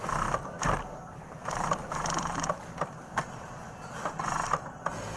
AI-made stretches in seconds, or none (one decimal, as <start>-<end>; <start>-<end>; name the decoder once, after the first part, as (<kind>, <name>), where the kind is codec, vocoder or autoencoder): 1.8-3.6 (vocoder, BigVGAN v2)